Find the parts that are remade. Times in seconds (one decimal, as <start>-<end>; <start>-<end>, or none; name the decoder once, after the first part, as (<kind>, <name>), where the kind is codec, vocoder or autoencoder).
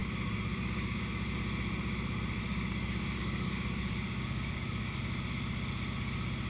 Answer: 0.0-1.0 (codec, DAC); 2.4-5.0